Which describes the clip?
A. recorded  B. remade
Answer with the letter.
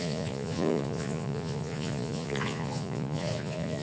B